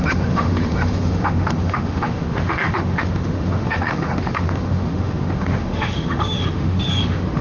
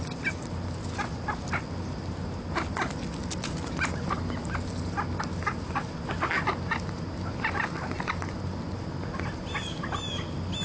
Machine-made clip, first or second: first